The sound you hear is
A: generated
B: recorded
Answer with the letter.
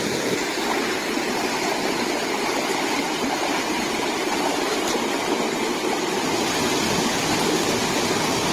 B